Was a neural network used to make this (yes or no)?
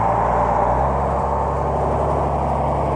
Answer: no